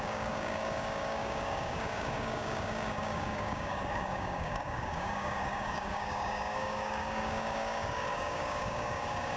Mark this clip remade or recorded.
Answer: remade